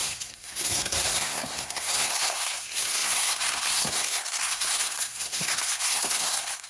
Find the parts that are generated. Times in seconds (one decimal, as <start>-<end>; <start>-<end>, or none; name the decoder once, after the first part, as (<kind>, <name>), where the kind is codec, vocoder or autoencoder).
0.0-6.7 (codec, SNAC)